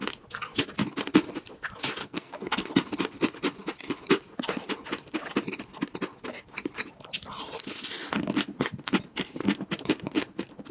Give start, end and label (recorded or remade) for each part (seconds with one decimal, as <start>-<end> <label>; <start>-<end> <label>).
0.0-2.0 recorded; 2.0-2.7 remade; 2.7-10.7 recorded